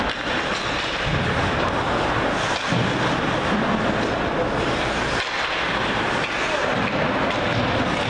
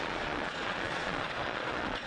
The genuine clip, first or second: first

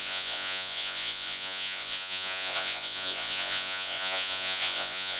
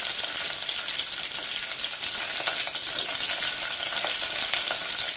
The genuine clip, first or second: second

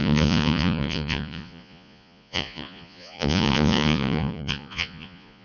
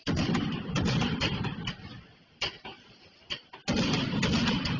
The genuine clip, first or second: second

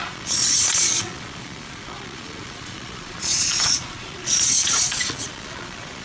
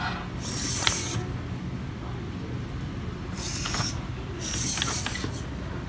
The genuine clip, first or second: second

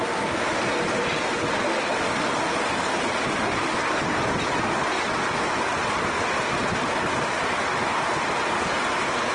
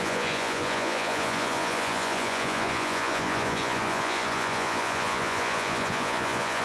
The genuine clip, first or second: first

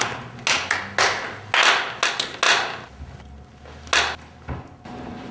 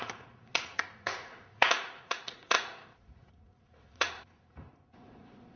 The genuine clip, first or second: first